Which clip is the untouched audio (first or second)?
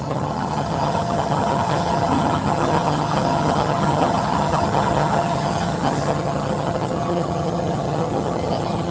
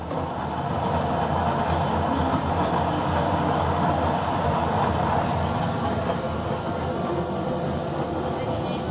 second